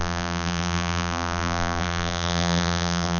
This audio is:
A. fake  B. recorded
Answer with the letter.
A